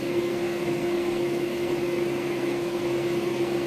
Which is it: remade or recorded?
remade